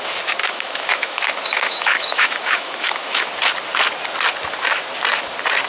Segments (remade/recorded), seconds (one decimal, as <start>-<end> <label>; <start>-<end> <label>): 0.0-0.4 recorded; 0.4-3.3 remade; 3.3-5.7 recorded